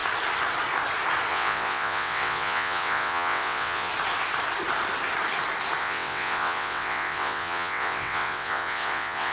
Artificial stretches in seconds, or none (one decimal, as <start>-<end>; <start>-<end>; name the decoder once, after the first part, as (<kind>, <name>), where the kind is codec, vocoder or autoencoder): 1.3-3.9 (vocoder, WaveNeXt); 5.8-9.3